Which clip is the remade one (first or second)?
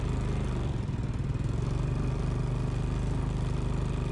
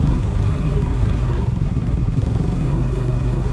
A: second